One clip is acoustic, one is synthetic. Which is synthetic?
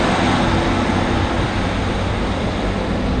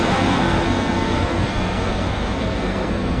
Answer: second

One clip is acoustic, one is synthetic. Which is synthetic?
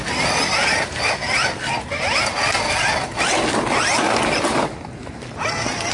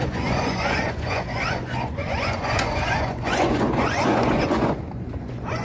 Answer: second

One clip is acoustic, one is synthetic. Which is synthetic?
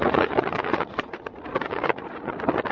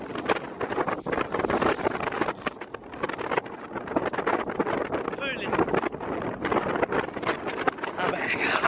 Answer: first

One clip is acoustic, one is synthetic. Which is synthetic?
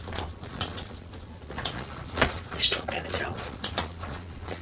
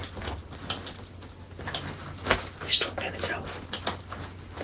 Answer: first